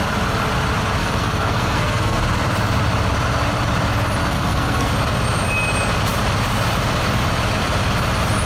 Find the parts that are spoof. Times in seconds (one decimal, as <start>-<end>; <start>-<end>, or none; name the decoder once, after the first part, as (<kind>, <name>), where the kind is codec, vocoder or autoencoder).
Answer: 1.0-2.2 (codec, SNAC); 4.2-4.9